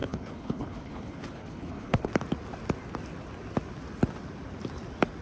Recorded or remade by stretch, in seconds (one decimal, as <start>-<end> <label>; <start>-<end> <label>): 0.0-2.1 remade; 2.1-5.2 recorded